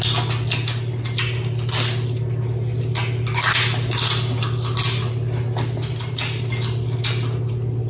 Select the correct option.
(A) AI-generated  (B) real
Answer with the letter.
B